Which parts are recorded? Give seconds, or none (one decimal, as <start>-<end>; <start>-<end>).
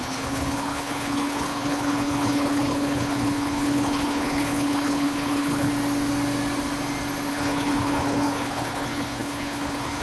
5.7-7.3